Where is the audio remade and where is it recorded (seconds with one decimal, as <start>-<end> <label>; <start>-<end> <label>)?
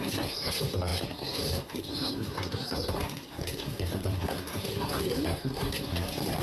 0.0-6.4 remade